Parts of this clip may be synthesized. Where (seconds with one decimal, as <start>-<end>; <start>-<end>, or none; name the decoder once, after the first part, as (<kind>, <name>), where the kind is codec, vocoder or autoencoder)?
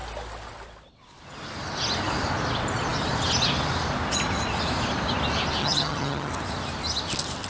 5.6-6.3 (vocoder, HiFi-GAN)